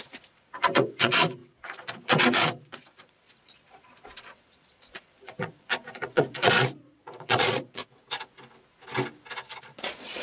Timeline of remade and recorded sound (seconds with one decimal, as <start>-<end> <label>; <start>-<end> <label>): 0.0-7.8 remade; 7.8-9.6 recorded; 9.6-10.2 remade